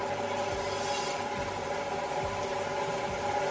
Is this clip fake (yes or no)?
no